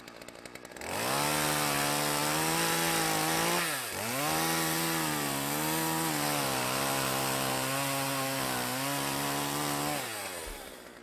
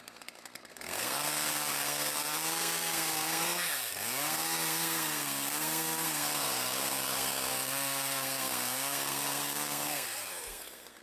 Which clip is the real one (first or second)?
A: first